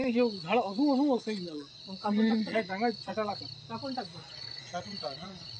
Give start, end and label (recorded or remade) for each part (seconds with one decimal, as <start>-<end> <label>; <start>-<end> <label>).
0.0-3.4 remade; 3.4-4.2 recorded; 4.2-5.6 remade